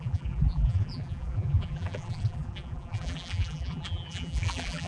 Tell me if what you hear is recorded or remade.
remade